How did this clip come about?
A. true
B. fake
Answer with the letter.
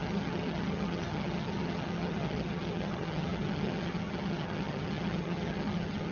B